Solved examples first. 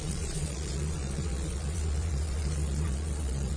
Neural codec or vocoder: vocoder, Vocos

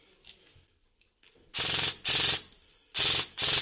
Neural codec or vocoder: none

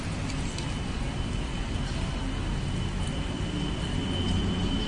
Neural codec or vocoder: none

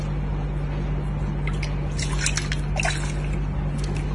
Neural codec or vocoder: none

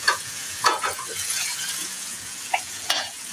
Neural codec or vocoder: vocoder, Vocos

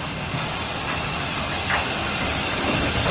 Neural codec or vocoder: none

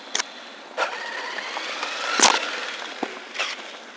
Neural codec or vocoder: none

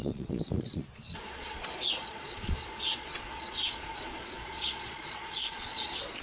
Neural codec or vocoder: vocoder, Vocos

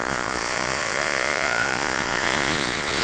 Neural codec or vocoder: vocoder, Vocos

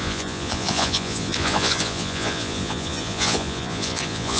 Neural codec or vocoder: vocoder, Vocos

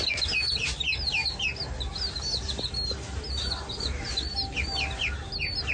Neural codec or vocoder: none